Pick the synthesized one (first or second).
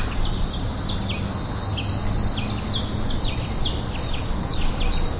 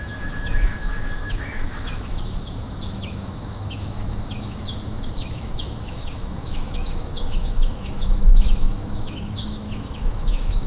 second